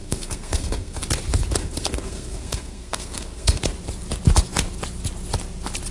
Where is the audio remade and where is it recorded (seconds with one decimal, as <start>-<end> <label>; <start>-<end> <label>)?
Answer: 0.0-1.0 remade; 1.0-1.6 recorded; 1.6-3.6 remade; 3.6-5.9 recorded

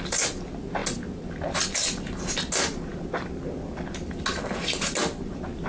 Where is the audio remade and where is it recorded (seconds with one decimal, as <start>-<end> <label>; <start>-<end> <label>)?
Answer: 0.0-5.7 recorded

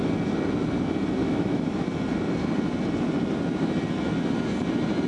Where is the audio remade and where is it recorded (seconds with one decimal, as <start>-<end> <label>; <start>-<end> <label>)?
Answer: 0.0-1.2 recorded; 1.2-1.8 remade; 1.8-5.1 recorded